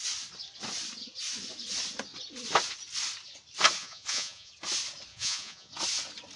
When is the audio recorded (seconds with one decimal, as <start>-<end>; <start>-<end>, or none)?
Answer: 0.0-3.8; 4.5-5.1; 5.7-6.4